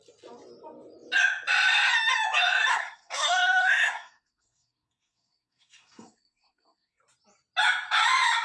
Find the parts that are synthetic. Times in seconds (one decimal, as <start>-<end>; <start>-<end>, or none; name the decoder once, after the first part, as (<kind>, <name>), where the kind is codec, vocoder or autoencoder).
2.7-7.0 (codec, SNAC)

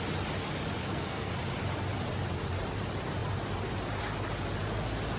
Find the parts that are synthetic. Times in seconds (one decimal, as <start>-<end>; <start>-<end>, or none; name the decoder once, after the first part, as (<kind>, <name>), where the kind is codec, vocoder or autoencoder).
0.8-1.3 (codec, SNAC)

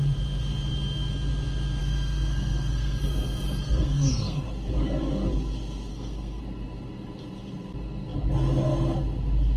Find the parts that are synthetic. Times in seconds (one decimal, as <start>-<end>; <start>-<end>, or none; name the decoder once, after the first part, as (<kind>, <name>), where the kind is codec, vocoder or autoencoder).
1.8-4.4 (codec, SNAC); 5.9-6.4

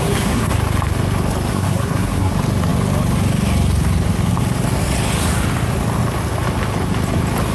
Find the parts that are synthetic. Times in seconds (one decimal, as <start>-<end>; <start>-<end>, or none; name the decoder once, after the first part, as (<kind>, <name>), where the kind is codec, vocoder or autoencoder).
0.0-0.5 (codec, SNAC); 1.5-2.3

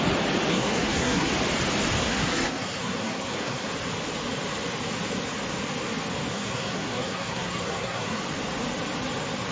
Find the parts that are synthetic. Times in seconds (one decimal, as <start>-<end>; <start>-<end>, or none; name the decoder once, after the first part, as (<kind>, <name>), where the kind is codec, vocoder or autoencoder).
0.5-1.3 (codec, SNAC); 2.0-3.7; 6.3-8.2

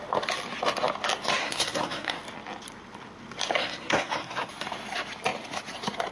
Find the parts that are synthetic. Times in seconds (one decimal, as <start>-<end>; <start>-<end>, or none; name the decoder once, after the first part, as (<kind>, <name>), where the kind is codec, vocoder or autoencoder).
1.4-2.2 (codec, SNAC); 3.6-4.5

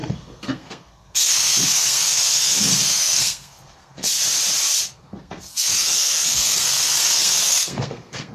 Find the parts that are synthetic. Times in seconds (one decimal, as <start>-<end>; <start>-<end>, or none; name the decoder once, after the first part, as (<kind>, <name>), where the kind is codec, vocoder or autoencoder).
0.0-4.1 (codec, SNAC); 4.9-8.3

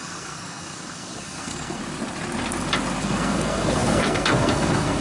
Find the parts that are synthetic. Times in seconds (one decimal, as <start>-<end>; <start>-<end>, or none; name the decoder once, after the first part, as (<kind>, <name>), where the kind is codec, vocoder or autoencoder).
0.0-1.8 (codec, SNAC); 3.0-5.0